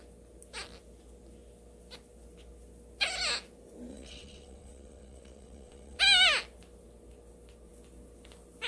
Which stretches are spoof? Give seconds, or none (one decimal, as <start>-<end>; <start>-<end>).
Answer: 3.9-6.0